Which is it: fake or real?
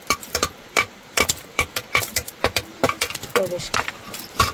fake